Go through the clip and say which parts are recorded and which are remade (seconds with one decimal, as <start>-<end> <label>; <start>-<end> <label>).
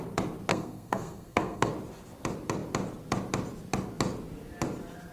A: 0.0-0.5 recorded; 0.5-1.7 remade; 1.7-5.1 recorded